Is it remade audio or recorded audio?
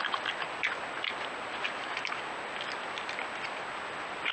recorded